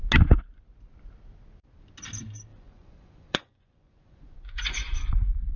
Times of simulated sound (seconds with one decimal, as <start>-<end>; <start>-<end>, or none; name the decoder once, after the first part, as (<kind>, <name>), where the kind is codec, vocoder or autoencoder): 2.5-5.1 (vocoder, Vocos)